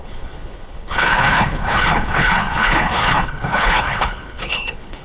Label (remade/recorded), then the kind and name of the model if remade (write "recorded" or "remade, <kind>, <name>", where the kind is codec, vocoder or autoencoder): remade, codec, HILCodec